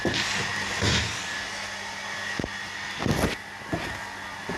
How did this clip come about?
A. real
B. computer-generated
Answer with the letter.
A